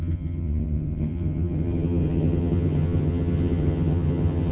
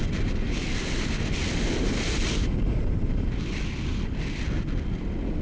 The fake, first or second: first